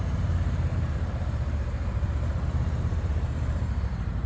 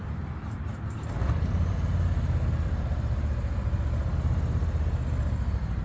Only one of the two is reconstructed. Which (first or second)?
first